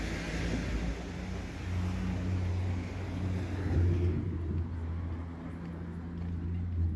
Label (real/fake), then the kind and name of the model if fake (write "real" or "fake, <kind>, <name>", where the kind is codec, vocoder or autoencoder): real